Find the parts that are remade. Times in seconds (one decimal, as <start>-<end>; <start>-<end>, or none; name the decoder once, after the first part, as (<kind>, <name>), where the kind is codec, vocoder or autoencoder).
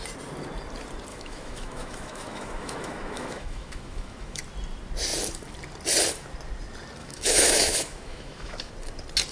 1.1-4.4 (autoencoder, DAC-VAE); 7.0-8.7